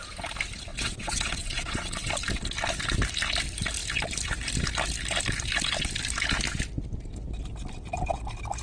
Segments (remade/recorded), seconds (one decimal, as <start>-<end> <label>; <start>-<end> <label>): 0.0-0.7 recorded; 0.7-2.1 remade; 2.1-8.6 recorded